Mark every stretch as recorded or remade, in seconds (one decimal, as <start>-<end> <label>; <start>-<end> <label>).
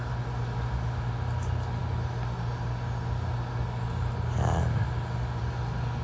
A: 0.0-6.0 recorded